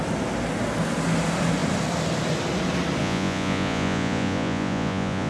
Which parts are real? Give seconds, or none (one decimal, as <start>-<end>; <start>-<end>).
0.0-3.0